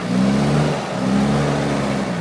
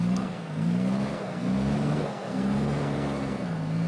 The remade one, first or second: second